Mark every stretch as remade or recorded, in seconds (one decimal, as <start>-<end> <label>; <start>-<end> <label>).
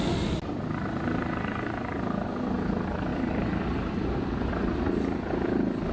0.0-3.1 recorded; 3.1-4.5 remade; 4.5-5.9 recorded